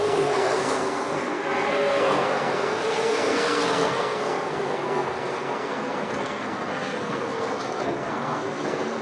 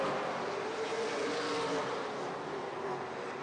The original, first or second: second